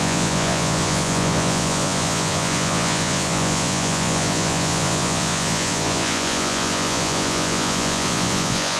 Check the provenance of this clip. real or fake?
fake